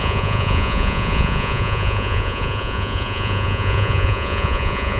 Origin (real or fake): fake